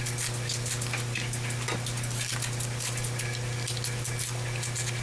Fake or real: real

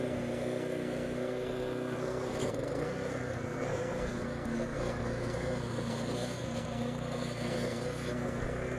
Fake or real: fake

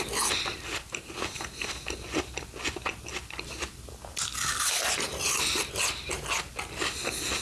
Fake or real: real